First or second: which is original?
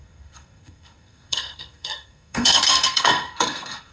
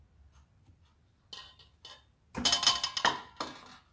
second